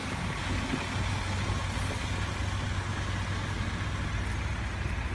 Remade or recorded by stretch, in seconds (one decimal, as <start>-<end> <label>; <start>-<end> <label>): 0.0-5.1 recorded